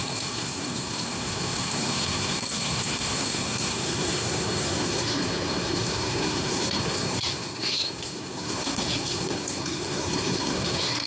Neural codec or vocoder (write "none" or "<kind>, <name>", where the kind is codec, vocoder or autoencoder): codec, SNAC